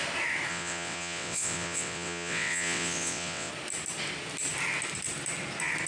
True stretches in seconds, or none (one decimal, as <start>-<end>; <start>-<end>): 0.0-0.5; 3.5-5.9